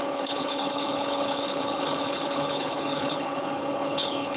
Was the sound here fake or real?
fake